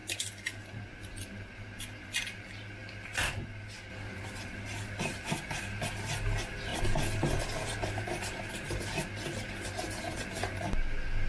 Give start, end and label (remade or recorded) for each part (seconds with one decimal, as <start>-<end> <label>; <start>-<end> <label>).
0.0-11.3 recorded